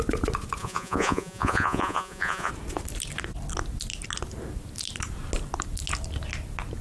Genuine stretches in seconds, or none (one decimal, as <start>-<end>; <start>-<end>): 0.0-0.6; 2.5-6.8